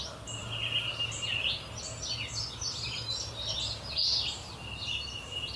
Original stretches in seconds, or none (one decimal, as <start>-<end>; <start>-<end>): 0.0-0.4; 1.5-5.6